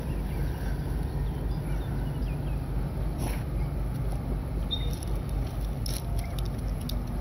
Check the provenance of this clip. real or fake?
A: real